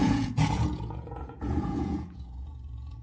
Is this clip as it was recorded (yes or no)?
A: no